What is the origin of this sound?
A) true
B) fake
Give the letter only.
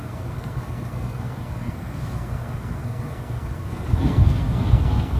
B